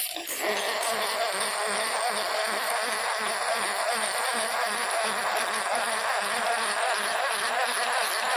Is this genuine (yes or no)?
yes